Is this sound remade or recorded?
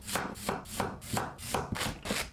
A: recorded